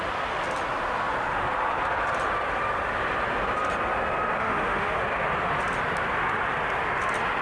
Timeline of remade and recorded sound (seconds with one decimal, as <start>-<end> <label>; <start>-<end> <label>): 0.0-4.4 recorded; 4.4-5.0 remade; 5.0-7.4 recorded